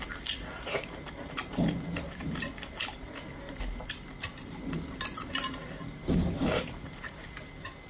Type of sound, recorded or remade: recorded